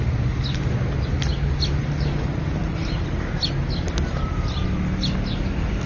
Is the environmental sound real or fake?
real